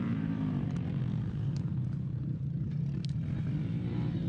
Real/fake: fake